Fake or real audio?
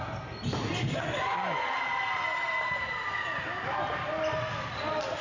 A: real